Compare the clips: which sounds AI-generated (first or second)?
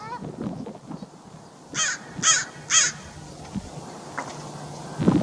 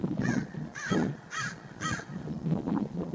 second